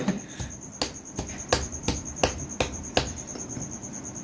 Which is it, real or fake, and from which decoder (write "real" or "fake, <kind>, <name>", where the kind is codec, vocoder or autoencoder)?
real